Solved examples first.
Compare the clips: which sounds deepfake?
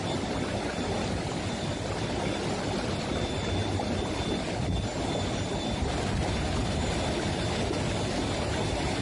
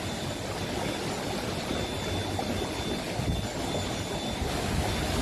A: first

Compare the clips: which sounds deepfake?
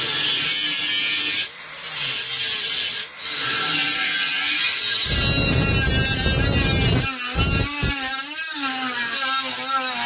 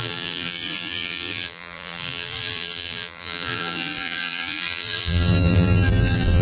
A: second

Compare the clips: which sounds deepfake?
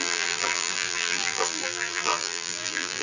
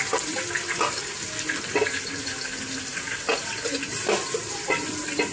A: first